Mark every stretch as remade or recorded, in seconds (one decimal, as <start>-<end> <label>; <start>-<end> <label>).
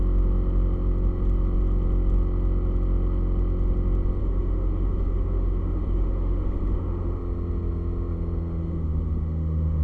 0.0-4.2 recorded; 4.2-7.2 remade; 7.2-8.6 recorded; 8.6-9.8 remade